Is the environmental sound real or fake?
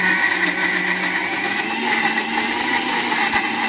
real